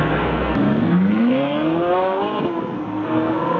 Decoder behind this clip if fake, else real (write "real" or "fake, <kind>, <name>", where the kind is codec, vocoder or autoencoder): fake, codec, SNAC